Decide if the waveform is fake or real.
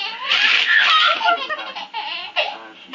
real